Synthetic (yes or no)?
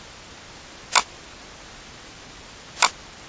no